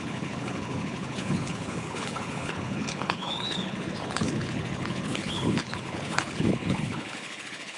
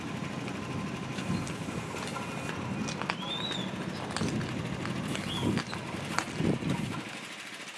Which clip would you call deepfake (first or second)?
first